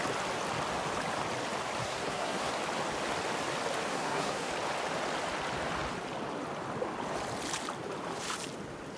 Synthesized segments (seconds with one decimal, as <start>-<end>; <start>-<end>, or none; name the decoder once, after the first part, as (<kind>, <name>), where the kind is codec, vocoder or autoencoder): 1.8-2.5 (codec, SNAC); 3.9-4.5